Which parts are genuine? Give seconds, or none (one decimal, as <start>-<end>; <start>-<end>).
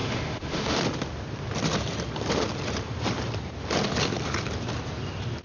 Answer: 0.8-5.4